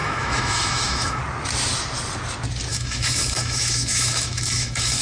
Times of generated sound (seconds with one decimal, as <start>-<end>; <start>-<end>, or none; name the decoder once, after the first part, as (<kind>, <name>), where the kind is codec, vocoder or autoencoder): 0.0-1.2 (autoencoder, DAC-VAE); 2.7-5.0